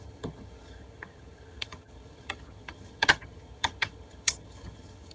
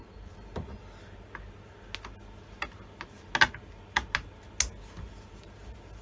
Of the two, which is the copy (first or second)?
first